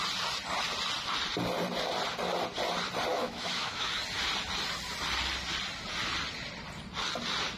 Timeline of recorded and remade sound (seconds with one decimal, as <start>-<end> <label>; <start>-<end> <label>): 0.0-3.1 recorded; 3.1-4.0 remade; 4.0-7.6 recorded